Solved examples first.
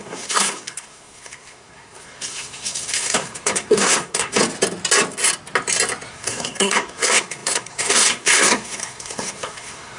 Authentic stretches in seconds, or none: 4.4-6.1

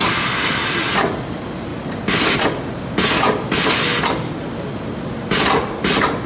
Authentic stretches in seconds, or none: 0.0-6.3

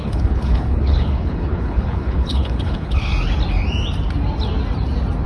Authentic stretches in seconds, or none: 3.1-5.3

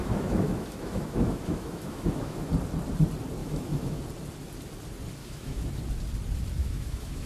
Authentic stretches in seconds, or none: 2.5-3.4; 4.0-5.2; 5.7-6.6

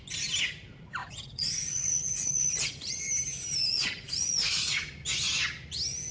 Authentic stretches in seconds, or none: 0.0-1.0; 3.0-3.7; 4.9-6.1